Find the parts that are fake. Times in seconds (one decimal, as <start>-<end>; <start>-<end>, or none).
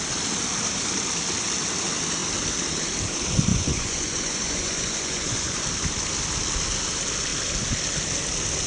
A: 3.5-5.6